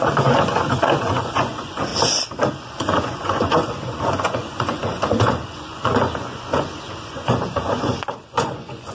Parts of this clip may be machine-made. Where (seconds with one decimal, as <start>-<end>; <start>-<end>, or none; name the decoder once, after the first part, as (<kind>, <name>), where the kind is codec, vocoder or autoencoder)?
0.0-1.9 (vocoder, Vocos); 2.5-8.9